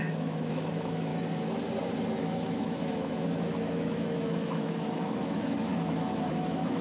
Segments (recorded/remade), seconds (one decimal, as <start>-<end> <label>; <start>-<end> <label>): 0.0-1.1 remade; 1.1-2.2 recorded; 2.2-6.8 remade